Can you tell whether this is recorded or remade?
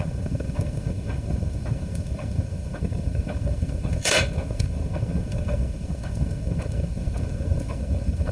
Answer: remade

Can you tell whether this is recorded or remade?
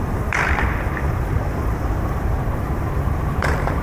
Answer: remade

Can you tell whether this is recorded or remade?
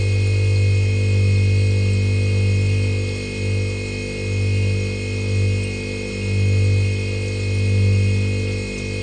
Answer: recorded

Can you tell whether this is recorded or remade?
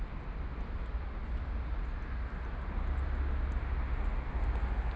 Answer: recorded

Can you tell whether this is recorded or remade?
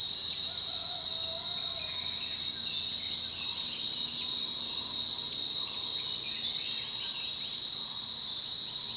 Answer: recorded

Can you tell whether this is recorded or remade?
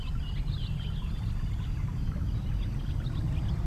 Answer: recorded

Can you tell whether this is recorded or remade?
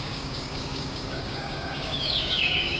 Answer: remade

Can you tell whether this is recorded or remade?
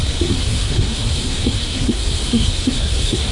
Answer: remade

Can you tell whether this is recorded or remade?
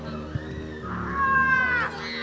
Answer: recorded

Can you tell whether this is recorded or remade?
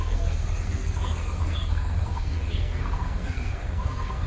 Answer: remade